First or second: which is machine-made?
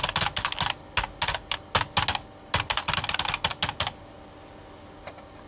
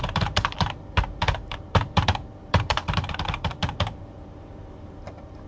second